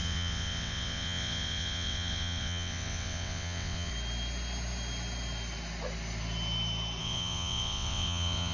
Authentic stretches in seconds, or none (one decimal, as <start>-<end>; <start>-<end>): 3.9-7.0